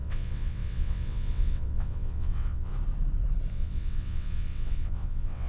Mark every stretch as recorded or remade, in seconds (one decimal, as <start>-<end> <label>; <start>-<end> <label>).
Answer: 0.0-2.7 remade; 2.7-3.5 recorded; 3.5-5.5 remade